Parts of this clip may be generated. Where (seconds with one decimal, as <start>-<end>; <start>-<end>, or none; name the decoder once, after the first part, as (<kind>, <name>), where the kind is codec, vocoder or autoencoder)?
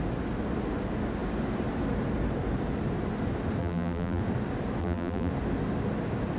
3.6-4.2 (vocoder, BigVGAN v2); 4.8-5.3